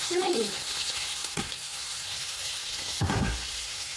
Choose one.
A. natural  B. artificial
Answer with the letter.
B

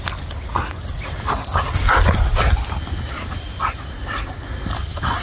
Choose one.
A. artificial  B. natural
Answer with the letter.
B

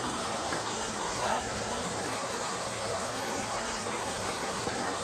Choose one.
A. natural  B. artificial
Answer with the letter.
B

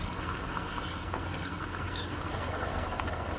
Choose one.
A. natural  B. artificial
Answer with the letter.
B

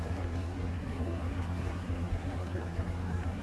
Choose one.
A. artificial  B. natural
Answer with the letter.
A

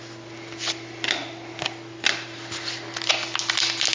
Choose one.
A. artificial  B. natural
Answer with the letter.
B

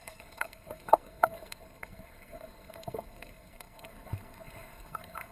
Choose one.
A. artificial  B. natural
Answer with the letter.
A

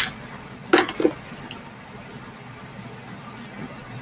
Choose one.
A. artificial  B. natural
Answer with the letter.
B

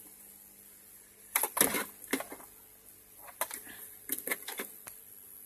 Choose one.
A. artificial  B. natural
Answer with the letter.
B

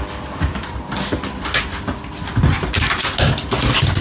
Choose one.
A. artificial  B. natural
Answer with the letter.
B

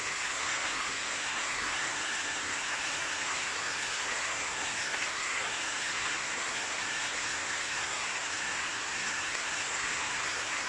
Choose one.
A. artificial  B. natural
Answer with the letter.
A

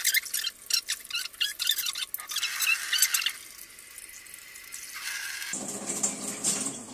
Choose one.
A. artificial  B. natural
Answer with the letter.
B